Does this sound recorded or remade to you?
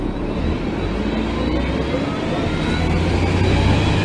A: recorded